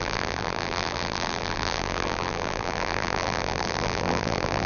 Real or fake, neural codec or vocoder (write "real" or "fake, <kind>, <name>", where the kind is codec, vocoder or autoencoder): fake, vocoder, BigVGAN v2